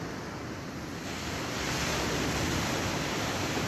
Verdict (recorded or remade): recorded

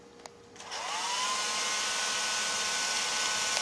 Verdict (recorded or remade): recorded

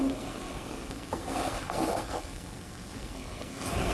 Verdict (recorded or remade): remade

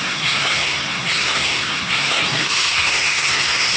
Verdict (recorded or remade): remade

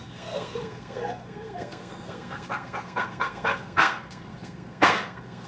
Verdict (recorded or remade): remade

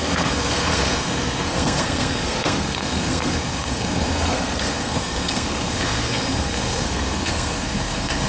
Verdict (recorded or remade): remade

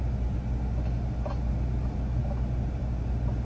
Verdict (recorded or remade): recorded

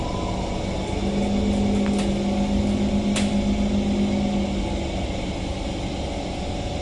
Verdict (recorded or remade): recorded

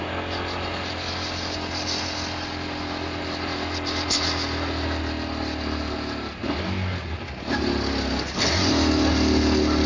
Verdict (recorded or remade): recorded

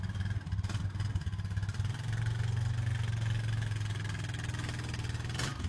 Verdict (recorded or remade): recorded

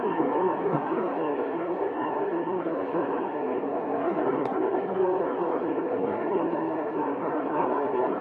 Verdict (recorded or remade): remade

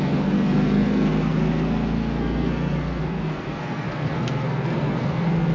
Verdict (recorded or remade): remade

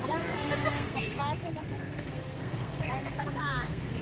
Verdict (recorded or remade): remade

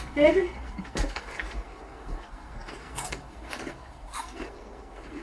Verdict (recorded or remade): remade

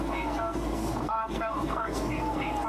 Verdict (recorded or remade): remade